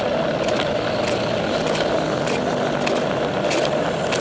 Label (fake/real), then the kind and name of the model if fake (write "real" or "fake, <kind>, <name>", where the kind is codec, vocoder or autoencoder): real